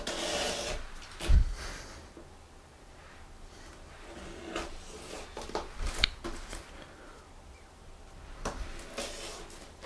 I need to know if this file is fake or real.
real